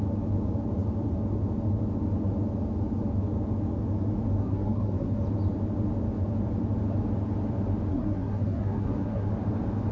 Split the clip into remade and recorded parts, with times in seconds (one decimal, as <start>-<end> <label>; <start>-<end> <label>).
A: 0.0-4.4 recorded; 4.4-5.2 remade; 5.2-7.9 recorded; 7.9-9.3 remade; 9.3-9.9 recorded